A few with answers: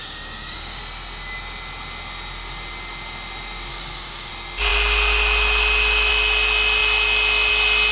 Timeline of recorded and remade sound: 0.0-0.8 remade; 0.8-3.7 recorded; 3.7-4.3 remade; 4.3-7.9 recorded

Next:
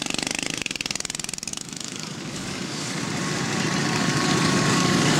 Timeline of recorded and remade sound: 0.0-1.5 recorded; 1.5-3.0 remade; 3.0-3.8 recorded; 3.8-5.2 remade

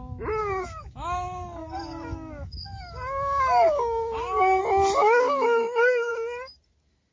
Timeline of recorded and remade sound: 0.0-0.4 recorded; 0.4-4.6 remade; 4.6-5.0 recorded; 5.0-6.1 remade; 6.1-7.1 recorded

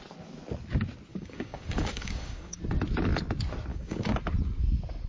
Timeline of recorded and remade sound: 0.0-1.1 recorded; 1.1-2.6 remade; 2.6-3.7 recorded; 3.7-4.2 remade; 4.2-5.1 recorded